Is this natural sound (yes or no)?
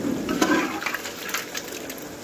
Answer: yes